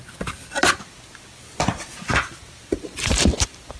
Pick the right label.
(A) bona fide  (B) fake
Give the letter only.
B